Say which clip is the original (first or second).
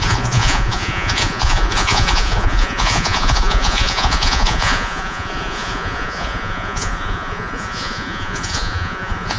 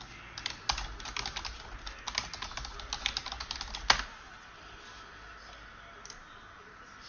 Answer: second